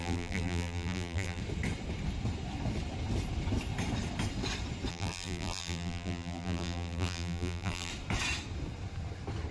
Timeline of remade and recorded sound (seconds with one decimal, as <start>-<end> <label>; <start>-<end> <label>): 0.0-1.4 remade; 1.4-4.9 recorded; 4.9-7.9 remade; 7.9-9.5 recorded